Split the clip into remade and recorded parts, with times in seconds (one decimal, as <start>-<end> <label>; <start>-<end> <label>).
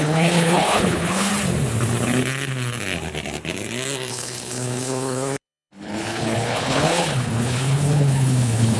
0.0-1.3 remade; 1.3-4.1 recorded; 4.1-8.8 remade